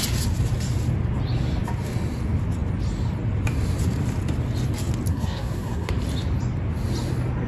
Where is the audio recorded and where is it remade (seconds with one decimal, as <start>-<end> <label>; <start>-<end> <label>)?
0.0-5.1 recorded; 5.1-5.9 remade; 5.9-7.5 recorded